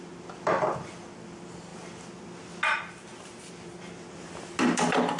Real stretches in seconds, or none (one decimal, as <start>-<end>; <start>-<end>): 0.0-5.2